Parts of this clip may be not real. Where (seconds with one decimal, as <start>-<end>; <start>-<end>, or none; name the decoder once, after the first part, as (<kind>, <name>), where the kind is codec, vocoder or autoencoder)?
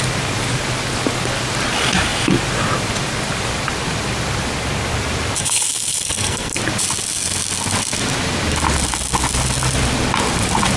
5.4-6.6 (codec, SNAC)